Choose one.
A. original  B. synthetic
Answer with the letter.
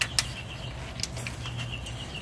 A